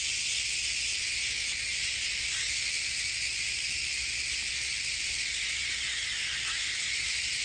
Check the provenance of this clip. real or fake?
real